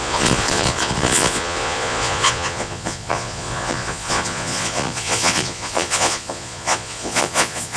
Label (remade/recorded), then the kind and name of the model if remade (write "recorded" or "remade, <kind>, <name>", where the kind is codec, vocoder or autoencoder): remade, vocoder, Vocos